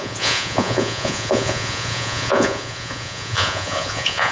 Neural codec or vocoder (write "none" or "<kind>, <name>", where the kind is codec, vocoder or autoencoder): vocoder, Vocos